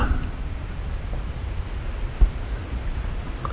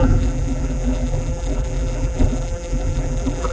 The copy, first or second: second